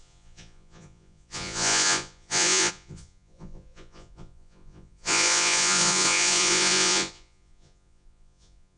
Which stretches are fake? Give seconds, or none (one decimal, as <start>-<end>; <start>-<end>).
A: 0.0-8.8